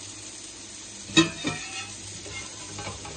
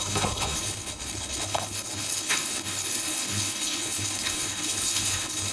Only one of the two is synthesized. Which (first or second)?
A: second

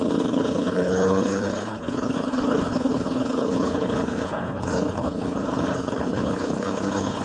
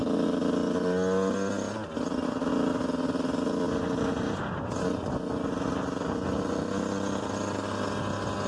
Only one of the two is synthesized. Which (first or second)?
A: first